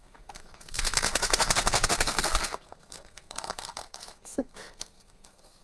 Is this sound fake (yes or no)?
yes